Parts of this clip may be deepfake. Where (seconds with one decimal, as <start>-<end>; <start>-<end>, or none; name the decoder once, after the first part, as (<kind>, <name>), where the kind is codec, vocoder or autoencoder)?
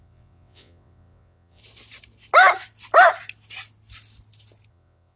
0.0-1.6 (vocoder, WaveNeXt); 4.7-5.2